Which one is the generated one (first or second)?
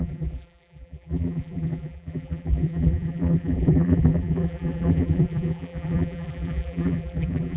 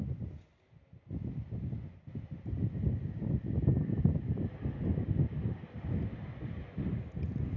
first